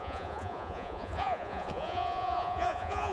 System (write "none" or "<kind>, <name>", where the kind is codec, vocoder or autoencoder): vocoder, Vocos